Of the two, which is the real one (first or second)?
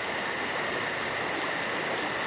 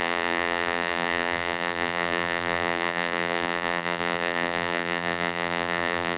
first